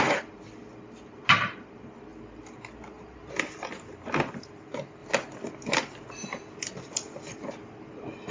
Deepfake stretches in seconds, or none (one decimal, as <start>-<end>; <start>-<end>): none